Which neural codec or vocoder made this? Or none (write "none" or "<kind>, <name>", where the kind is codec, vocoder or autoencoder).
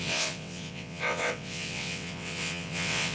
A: vocoder, WaveNeXt